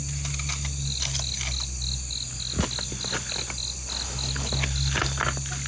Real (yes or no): yes